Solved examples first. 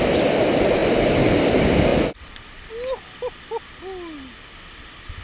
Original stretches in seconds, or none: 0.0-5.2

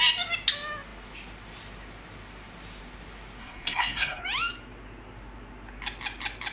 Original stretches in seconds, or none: 0.0-3.4; 4.2-6.5